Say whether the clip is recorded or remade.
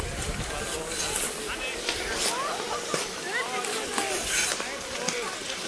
recorded